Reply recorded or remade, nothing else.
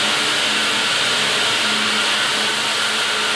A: recorded